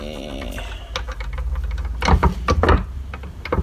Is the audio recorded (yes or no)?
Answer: yes